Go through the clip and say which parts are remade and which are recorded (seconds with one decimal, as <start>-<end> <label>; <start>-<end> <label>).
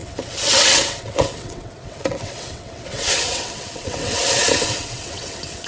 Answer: 0.0-5.7 remade